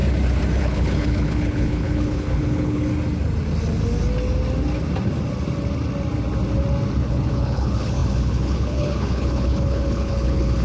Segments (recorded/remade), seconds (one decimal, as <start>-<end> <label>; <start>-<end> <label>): 0.0-0.6 recorded; 0.6-2.9 remade; 2.9-7.0 recorded; 7.0-10.6 remade